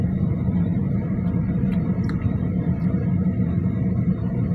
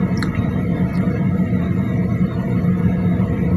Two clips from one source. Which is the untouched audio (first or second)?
second